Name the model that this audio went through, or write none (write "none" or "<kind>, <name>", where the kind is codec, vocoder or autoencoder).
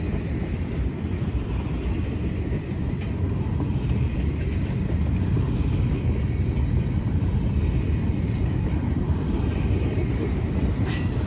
vocoder, BigVGAN v2